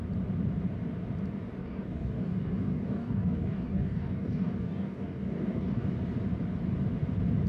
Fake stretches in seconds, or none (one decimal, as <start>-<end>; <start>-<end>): 1.6-5.9